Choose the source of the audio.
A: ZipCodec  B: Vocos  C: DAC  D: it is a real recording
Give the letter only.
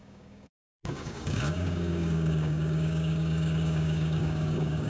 C